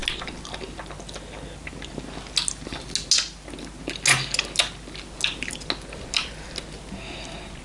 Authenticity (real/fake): real